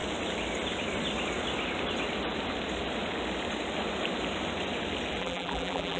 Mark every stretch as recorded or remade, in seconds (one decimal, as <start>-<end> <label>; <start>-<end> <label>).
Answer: 0.0-5.2 recorded; 5.2-6.0 remade